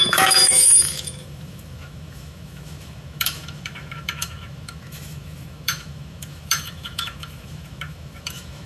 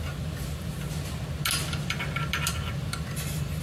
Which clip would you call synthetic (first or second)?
first